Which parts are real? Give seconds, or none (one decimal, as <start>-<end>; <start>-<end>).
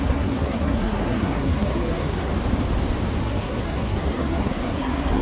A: 2.3-3.2